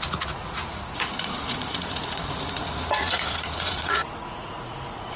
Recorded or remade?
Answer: remade